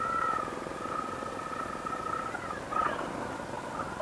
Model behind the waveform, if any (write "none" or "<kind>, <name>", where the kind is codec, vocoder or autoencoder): none